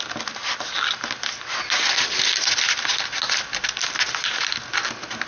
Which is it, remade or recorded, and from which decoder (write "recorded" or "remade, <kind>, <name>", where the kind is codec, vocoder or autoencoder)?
recorded